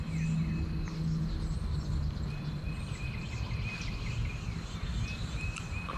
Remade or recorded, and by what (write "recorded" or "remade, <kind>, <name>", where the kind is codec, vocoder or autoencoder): recorded